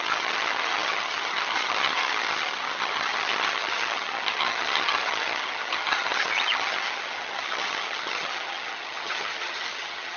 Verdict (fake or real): fake